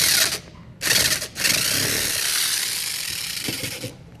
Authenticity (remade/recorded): recorded